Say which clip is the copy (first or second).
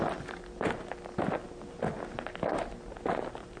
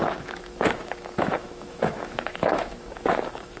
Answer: second